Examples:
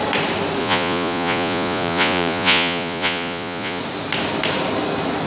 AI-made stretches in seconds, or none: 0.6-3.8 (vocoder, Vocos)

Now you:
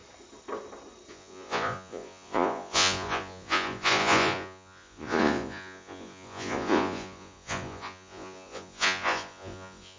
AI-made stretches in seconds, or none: 1.1-10.0 (vocoder, Vocos)

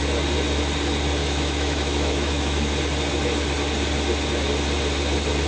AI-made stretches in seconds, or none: 1.2-2.7 (autoencoder, DAC-VAE)

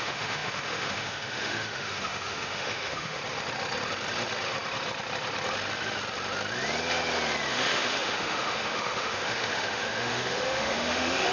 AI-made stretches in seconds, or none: 0.0-3.2 (autoencoder, DAC-VAE); 7.5-11.3

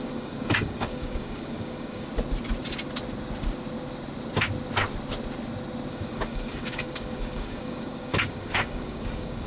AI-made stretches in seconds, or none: 0.0-2.1 (codec, DAC); 5.9-9.5

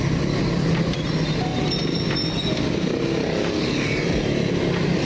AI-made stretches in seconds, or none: none

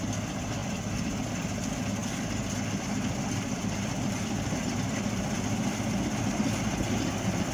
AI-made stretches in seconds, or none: none